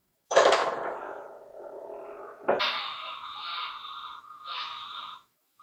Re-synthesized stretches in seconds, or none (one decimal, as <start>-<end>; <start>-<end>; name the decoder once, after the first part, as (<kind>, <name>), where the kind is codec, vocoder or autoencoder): 0.0-0.6 (autoencoder, DAC-VAE); 2.8-3.5; 4.2-5.6